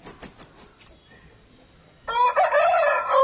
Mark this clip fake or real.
real